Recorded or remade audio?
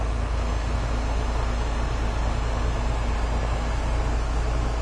recorded